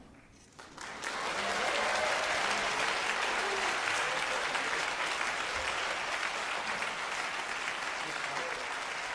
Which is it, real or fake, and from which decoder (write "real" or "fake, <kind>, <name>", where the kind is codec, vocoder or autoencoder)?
real